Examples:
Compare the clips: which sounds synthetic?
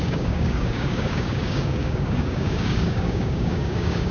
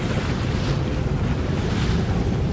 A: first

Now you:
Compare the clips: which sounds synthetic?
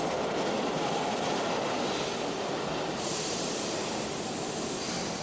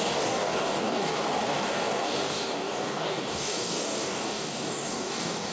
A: second